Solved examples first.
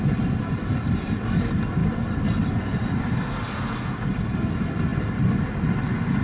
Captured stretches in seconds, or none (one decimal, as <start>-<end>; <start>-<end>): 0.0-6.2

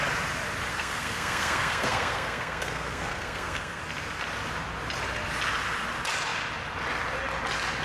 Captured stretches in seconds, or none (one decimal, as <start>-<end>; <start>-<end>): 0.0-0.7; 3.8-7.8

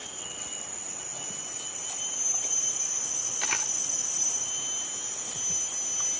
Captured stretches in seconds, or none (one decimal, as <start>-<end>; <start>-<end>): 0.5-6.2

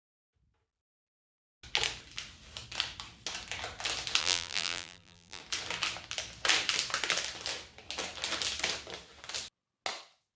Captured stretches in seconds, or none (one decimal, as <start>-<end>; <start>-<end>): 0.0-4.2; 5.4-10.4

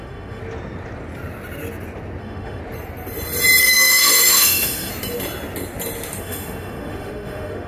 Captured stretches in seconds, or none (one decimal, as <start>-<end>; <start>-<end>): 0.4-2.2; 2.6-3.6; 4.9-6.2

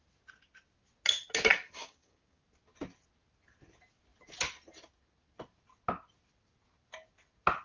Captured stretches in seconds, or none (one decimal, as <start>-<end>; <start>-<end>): 0.0-1.5; 2.4-7.6